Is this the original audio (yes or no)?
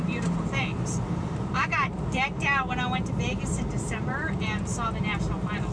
no